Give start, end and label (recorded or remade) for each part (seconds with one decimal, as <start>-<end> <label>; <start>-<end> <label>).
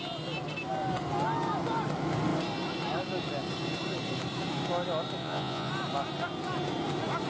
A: 0.0-5.2 recorded; 5.2-5.7 remade; 5.7-7.3 recorded